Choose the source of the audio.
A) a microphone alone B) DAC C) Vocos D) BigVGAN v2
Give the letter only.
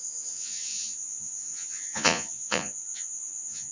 C